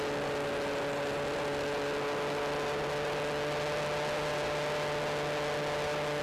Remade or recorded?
recorded